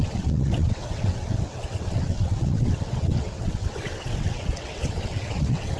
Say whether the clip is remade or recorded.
remade